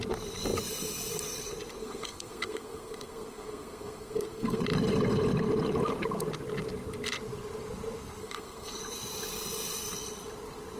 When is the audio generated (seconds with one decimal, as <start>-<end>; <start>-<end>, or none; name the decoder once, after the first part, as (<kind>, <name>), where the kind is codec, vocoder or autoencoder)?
1.8-4.6 (codec, SNAC); 8.2-8.8